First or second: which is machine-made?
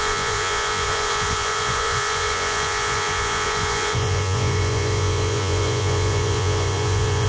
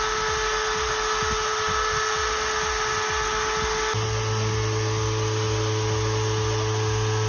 first